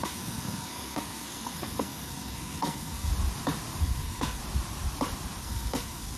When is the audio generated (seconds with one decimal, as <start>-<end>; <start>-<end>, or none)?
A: 0.0-3.1; 3.8-4.4; 5.4-6.2